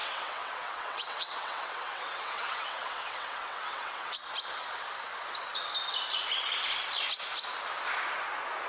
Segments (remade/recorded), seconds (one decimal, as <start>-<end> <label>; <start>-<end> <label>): 0.0-4.3 remade; 4.3-8.7 recorded